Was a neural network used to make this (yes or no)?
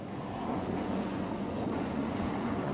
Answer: yes